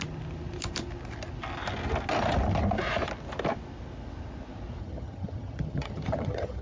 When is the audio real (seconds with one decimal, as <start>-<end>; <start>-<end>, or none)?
0.0-4.8